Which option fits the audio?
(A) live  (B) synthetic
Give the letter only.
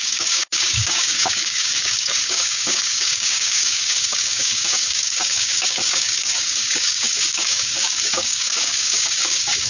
B